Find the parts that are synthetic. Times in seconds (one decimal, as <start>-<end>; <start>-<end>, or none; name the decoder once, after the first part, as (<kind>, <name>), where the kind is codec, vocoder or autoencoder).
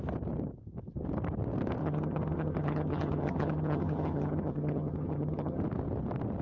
1.8-5.6 (vocoder, HiFi-GAN)